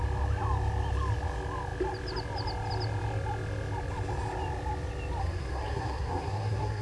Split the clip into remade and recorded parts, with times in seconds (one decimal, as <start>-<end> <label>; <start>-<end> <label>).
0.0-5.2 recorded; 5.2-6.8 remade